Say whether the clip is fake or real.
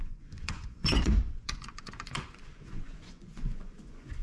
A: fake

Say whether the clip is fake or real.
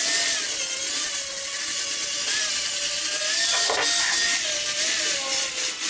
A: real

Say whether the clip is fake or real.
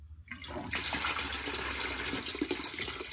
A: real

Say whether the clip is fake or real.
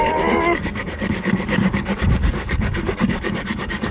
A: fake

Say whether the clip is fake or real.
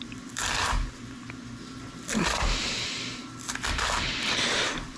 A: real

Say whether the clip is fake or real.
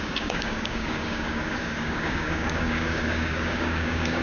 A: fake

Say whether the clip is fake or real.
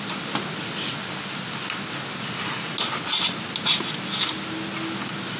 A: real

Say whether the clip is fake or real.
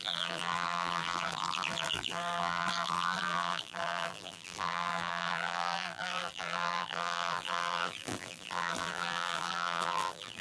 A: fake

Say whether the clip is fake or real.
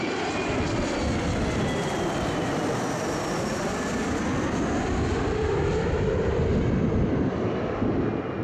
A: real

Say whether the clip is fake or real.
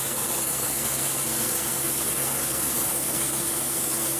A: fake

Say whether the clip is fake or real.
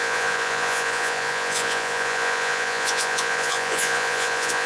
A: fake